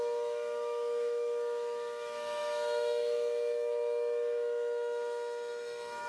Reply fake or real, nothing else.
fake